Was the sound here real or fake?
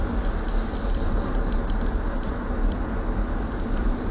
real